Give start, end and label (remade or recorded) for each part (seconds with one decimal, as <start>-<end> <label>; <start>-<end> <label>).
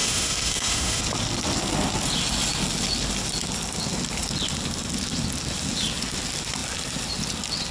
0.0-1.0 remade; 1.0-7.7 recorded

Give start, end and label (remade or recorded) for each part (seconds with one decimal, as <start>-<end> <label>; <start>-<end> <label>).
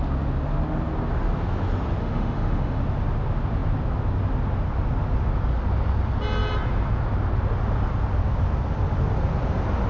0.0-2.0 recorded; 2.0-2.8 remade; 2.8-9.9 recorded